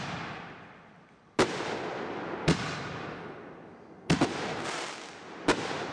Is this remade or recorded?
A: recorded